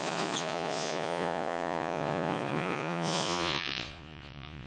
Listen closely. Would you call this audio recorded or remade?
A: remade